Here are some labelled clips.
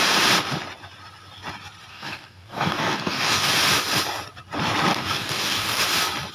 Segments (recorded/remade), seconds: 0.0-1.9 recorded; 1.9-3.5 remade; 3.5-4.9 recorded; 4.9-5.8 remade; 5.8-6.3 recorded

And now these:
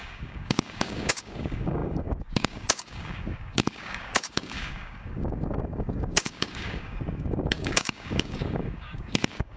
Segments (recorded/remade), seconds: 0.0-9.6 remade

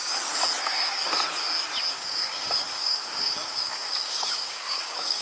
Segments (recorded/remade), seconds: 0.0-1.9 recorded; 1.9-5.2 remade

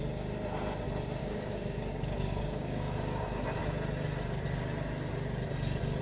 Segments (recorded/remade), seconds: 0.0-1.2 recorded; 1.2-3.6 remade; 3.6-6.0 recorded